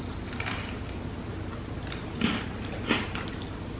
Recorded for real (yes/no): yes